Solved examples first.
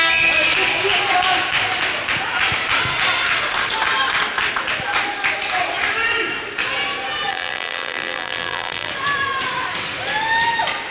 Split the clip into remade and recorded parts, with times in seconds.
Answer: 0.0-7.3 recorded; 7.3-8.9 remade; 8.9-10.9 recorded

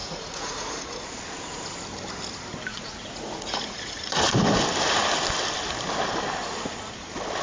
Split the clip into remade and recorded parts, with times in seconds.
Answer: 0.0-1.0 remade; 1.0-2.7 recorded; 2.7-4.2 remade; 4.2-7.4 recorded

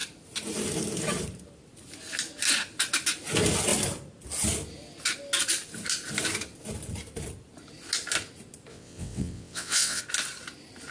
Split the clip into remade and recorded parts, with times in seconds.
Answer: 0.0-8.7 recorded; 8.7-10.0 remade; 10.0-10.9 recorded